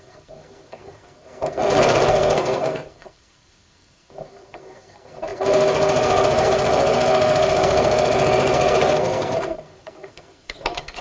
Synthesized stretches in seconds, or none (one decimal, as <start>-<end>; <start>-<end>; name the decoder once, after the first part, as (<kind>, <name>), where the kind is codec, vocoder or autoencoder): 0.0-11.0 (codec, SNAC)